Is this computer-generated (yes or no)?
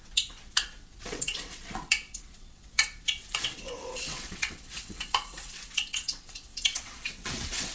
yes